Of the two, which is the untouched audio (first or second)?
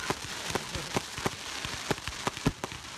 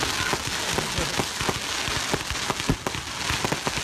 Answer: second